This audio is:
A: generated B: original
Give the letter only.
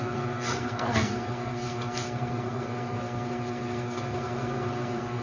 A